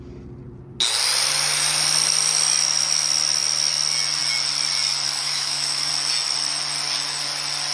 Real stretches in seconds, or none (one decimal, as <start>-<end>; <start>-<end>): 0.0-5.2; 5.9-7.7